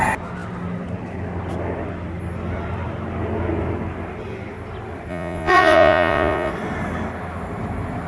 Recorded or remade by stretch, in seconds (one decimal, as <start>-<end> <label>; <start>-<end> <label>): 0.0-5.1 recorded; 5.1-6.5 remade; 6.5-8.1 recorded